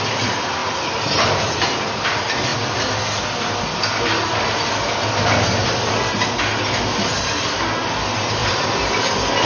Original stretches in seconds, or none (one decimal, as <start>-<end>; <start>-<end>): 0.0-0.6; 2.1-8.4; 9.1-9.5